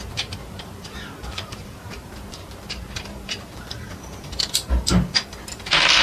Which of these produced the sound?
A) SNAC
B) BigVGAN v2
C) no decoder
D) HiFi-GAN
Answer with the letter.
B